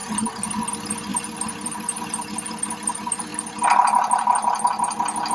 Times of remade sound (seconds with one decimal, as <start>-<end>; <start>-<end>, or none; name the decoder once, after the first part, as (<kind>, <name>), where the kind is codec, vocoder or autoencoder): 0.7-3.3 (vocoder, BigVGAN v2)

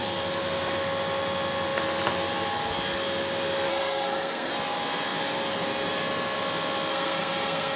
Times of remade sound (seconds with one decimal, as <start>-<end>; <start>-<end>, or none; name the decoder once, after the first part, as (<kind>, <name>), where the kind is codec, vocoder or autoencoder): 3.7-4.5 (codec, SNAC); 6.9-7.8